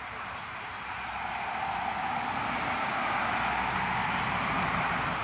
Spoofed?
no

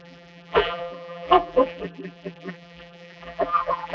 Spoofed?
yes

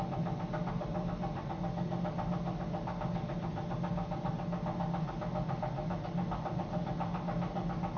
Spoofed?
no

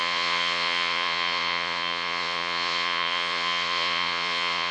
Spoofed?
yes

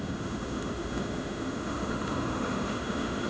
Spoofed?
yes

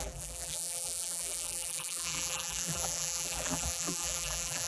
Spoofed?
yes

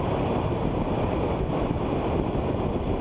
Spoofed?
no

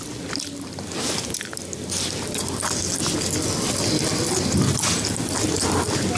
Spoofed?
no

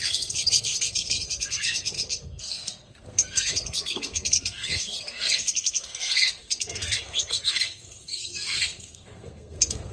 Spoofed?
yes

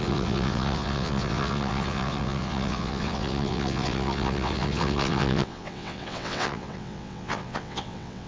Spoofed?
yes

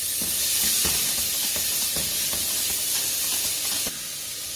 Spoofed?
no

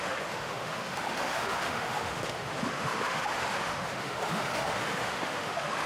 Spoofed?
yes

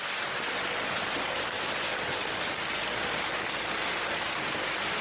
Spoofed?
no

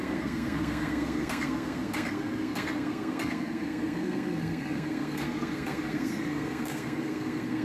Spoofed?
yes